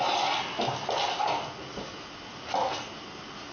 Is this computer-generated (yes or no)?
no